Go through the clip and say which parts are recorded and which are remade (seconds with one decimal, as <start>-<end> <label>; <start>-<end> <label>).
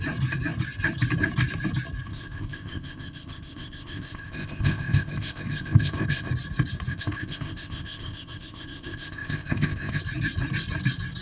0.0-2.1 recorded; 2.1-6.3 remade; 6.3-6.9 recorded; 6.9-10.0 remade; 10.0-11.2 recorded